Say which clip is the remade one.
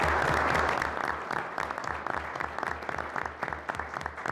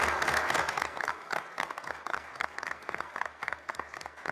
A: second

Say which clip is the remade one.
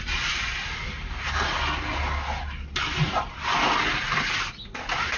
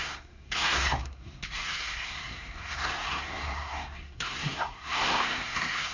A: second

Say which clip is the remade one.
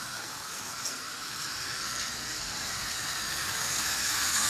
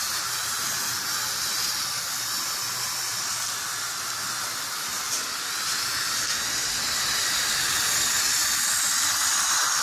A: first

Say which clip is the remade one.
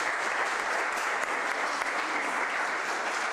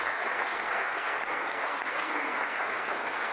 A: second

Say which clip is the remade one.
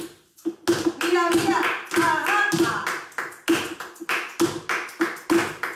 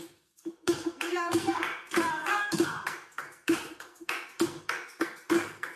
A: second